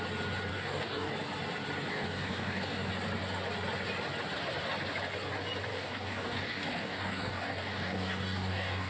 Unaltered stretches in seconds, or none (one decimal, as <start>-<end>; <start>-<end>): 0.0-0.5; 1.1-1.9; 2.9-5.7